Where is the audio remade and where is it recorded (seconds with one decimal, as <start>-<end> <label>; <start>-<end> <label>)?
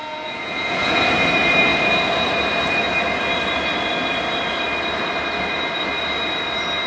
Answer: 0.0-1.0 remade; 1.0-6.9 recorded